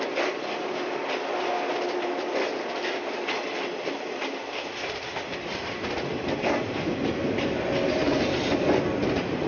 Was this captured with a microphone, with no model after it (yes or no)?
yes